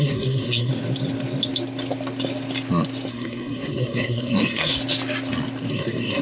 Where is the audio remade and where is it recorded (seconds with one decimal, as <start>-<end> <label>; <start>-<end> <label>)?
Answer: 0.0-0.7 remade; 0.7-3.1 recorded; 3.1-4.7 remade; 4.7-5.7 recorded; 5.7-6.2 remade